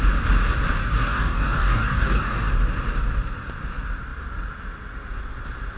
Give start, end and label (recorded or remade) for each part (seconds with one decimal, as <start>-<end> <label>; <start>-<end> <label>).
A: 0.0-0.8 recorded; 0.8-2.5 remade; 2.5-5.8 recorded